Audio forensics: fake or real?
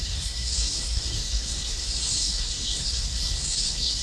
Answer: fake